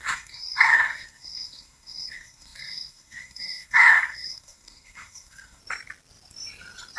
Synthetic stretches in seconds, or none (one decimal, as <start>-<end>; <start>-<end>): 0.0-5.6